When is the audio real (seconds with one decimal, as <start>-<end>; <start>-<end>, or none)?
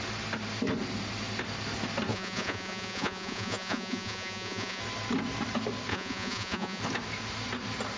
0.0-2.1; 4.8-5.9; 6.8-8.0